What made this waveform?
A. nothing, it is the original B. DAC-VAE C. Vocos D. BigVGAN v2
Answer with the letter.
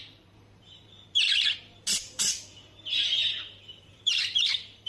D